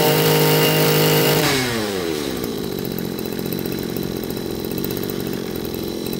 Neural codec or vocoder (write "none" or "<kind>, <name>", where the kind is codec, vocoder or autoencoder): vocoder, BigVGAN v2